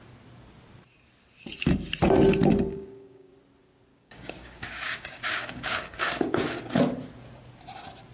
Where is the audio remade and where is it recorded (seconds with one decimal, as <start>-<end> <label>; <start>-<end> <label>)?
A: 0.0-2.7 recorded; 2.7-3.3 remade; 3.3-3.9 recorded; 3.9-6.6 remade; 6.6-8.1 recorded